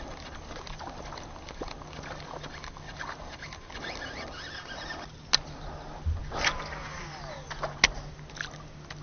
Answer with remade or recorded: recorded